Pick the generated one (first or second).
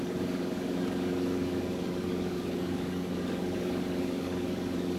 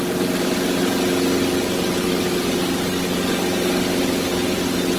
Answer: first